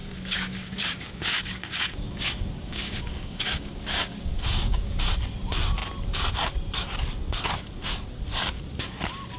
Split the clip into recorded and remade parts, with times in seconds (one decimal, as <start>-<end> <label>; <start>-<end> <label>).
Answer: 0.0-4.9 remade; 4.9-9.4 recorded